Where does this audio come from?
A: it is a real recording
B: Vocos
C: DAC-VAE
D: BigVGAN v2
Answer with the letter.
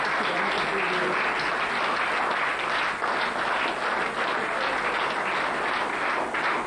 A